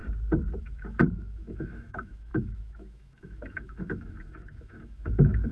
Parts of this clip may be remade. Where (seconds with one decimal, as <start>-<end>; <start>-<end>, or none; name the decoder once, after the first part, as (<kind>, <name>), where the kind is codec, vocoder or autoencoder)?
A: 0.6-5.5 (autoencoder, DAC-VAE)